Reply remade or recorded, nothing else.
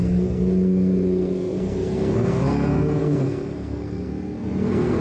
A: remade